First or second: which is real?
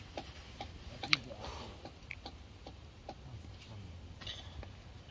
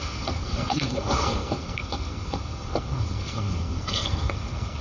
first